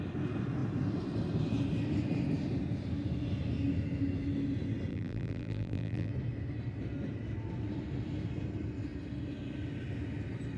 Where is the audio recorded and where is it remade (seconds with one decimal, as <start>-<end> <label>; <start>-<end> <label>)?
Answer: 0.0-4.9 recorded; 4.9-6.1 remade; 6.1-10.6 recorded

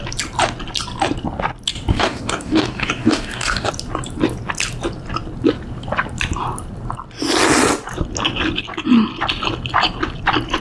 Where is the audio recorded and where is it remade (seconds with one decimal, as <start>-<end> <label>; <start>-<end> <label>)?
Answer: 0.0-1.9 recorded; 1.9-3.7 remade; 3.7-10.6 recorded

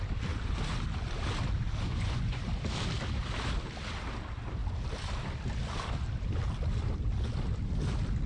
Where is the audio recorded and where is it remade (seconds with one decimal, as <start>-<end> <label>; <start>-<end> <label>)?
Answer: 0.0-1.9 recorded; 1.9-2.5 remade; 2.5-8.3 recorded

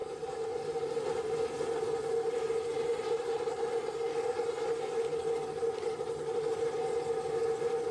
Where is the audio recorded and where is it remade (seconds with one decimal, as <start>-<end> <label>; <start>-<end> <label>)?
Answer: 0.0-7.9 recorded

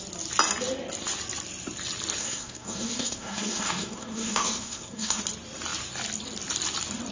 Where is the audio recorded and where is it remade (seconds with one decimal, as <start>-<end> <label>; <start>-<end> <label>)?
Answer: 0.0-2.2 recorded; 2.2-5.2 remade; 5.2-7.1 recorded

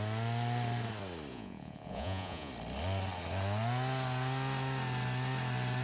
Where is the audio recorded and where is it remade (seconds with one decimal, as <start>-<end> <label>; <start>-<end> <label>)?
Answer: 0.0-1.3 recorded; 1.3-2.5 remade; 2.5-5.8 recorded

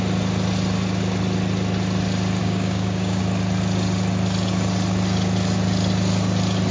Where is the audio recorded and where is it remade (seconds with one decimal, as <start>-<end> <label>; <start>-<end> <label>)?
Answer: 0.0-2.4 recorded; 2.4-3.2 remade; 3.2-6.7 recorded